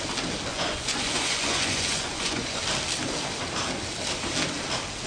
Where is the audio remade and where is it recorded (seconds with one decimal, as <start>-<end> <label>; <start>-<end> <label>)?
0.0-0.5 recorded; 0.5-2.6 remade; 2.6-5.1 recorded